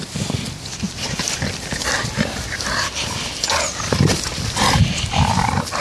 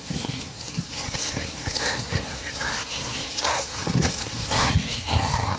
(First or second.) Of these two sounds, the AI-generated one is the second